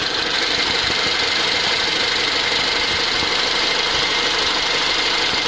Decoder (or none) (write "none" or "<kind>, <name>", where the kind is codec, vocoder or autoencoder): none